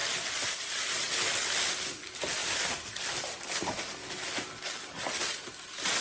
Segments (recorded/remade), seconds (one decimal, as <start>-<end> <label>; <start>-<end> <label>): 0.0-1.1 remade; 1.1-2.4 recorded; 2.4-3.9 remade; 3.9-4.8 recorded; 4.8-5.5 remade; 5.5-6.0 recorded